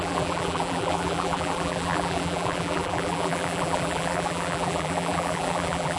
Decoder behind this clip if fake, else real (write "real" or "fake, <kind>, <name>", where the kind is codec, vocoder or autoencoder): fake, vocoder, BigVGAN v2